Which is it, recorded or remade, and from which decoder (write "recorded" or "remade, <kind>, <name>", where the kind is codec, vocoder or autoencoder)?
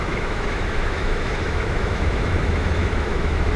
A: remade, autoencoder, DAC-VAE